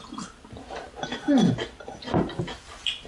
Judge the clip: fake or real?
real